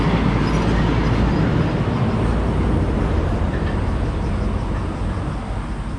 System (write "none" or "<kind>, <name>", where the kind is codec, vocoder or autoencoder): none